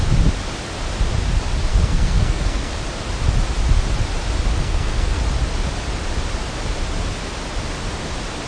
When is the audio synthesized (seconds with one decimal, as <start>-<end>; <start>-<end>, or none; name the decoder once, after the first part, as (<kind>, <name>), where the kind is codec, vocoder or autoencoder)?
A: 1.7-2.7 (codec, SNAC); 4.6-5.2